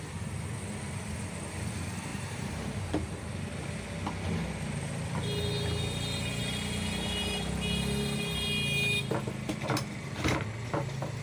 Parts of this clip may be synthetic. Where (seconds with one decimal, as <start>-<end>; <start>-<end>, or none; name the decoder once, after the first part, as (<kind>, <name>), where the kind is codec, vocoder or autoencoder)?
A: 2.1-3.3 (vocoder, BigVGAN v2)